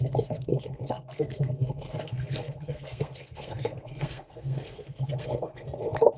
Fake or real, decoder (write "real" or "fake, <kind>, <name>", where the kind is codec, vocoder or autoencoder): fake, codec, SNAC